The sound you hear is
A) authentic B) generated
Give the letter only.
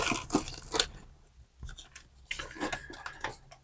A